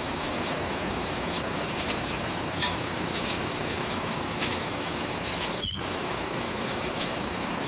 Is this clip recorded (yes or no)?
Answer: no